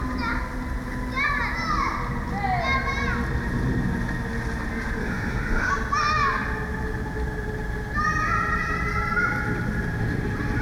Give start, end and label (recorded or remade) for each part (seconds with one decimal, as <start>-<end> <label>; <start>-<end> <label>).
0.0-5.0 recorded; 5.0-5.7 remade; 5.7-10.6 recorded